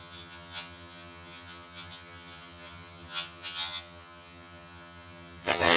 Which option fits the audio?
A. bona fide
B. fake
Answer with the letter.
B